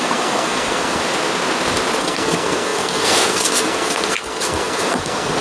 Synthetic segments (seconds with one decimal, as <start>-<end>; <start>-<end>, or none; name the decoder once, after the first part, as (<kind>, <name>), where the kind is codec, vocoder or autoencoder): 0.0-1.0 (codec, SNAC); 2.0-5.4